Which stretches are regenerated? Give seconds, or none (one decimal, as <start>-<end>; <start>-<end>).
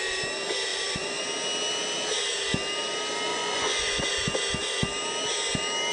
0.7-1.2; 3.3-4.0